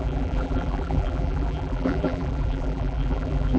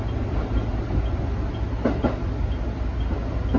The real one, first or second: second